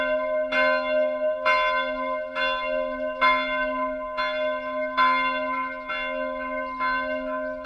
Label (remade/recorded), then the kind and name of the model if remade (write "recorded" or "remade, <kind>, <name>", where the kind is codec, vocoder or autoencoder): recorded